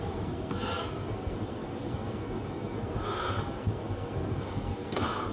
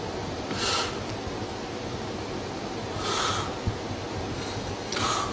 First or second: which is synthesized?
first